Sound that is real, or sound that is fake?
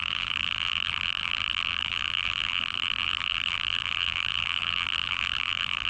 fake